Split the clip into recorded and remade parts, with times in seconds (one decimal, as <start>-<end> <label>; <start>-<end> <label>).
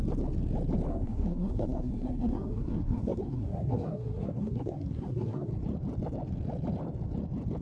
0.0-0.9 recorded; 0.9-5.5 remade; 5.5-7.6 recorded